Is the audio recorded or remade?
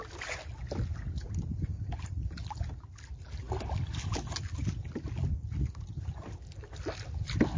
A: recorded